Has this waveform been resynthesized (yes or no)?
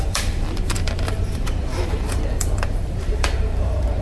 yes